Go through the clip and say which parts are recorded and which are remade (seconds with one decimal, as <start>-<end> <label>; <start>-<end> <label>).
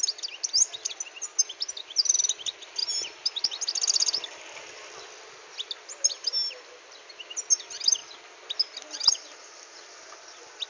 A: 0.0-10.7 recorded